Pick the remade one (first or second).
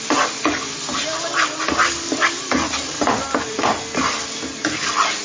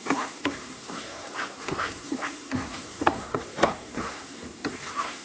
second